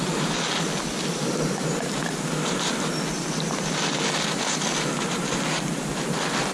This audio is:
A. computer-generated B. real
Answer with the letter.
B